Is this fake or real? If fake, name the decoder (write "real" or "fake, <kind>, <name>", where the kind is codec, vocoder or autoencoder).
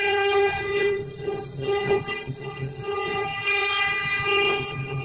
fake, vocoder, HiFi-GAN